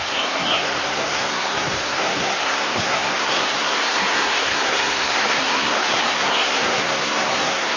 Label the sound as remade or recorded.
remade